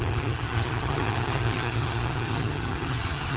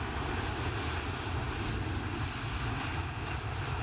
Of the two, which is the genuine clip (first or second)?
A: second